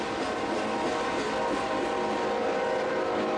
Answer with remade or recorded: recorded